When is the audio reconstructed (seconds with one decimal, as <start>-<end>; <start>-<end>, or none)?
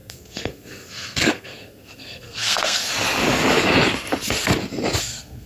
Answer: 0.0-2.9; 5.0-5.5